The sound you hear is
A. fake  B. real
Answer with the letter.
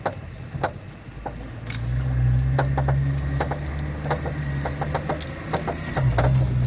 B